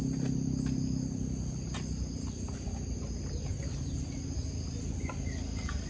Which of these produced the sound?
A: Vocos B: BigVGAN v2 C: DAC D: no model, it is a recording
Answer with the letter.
D